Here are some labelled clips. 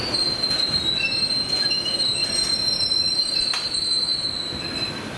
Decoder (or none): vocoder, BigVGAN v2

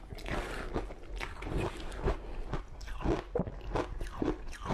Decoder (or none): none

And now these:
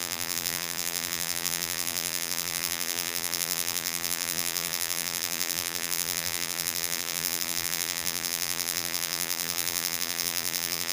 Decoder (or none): vocoder, BigVGAN v2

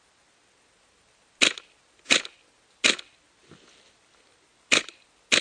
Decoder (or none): none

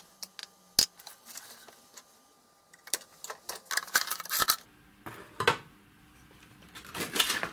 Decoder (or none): none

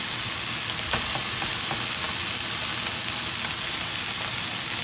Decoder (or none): none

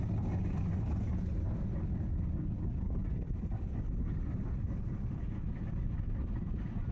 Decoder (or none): vocoder, BigVGAN v2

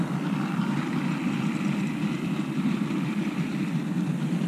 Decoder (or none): vocoder, BigVGAN v2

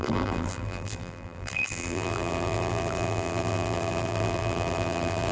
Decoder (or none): vocoder, BigVGAN v2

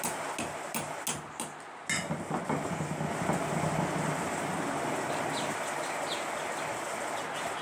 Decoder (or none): none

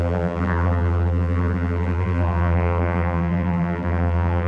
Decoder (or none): vocoder, BigVGAN v2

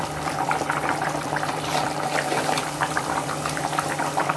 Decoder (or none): vocoder, BigVGAN v2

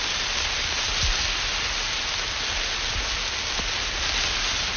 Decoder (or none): none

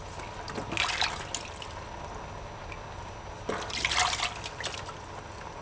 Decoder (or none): none